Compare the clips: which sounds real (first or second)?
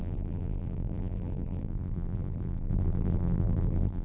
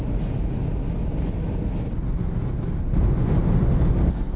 second